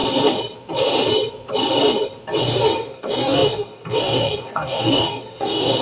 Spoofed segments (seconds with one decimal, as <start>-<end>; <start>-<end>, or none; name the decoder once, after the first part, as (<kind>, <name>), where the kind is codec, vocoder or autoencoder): 2.4-5.8 (codec, DAC)